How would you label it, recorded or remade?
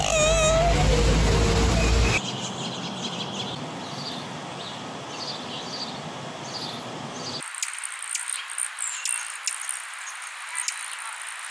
recorded